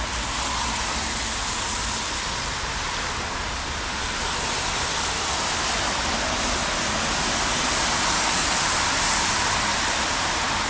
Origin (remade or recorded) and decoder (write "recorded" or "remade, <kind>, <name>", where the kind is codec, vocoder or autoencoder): recorded